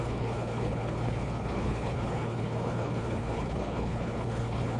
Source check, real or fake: fake